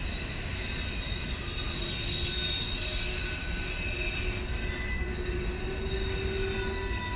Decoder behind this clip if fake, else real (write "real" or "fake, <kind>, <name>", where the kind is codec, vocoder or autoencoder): real